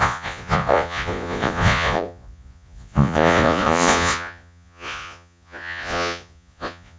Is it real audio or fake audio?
fake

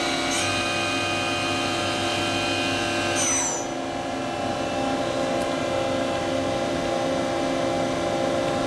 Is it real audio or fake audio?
real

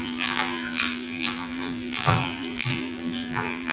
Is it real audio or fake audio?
fake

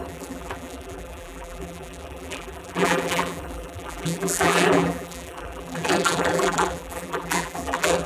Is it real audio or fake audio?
fake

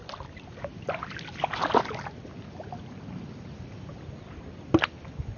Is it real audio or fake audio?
real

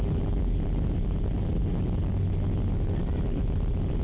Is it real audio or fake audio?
real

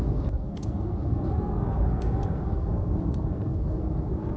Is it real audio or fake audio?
fake